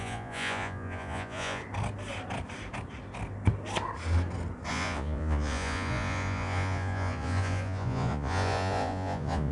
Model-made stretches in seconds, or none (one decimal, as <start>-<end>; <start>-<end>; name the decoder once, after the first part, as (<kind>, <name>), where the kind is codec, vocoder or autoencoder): 0.0-1.6 (vocoder, Vocos); 4.7-9.5